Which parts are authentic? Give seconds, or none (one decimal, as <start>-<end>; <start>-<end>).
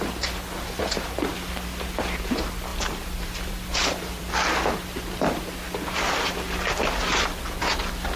0.0-2.7; 4.3-8.2